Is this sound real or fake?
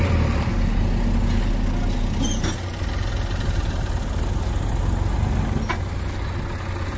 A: real